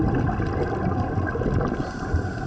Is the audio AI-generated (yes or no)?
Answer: no